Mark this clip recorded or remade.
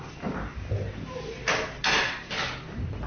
recorded